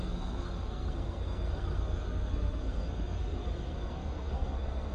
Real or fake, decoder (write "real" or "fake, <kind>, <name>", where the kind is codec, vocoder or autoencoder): fake, codec, SNAC